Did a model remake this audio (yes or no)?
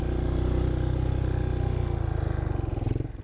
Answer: no